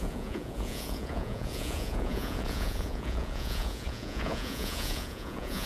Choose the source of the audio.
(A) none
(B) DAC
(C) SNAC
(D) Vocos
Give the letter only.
D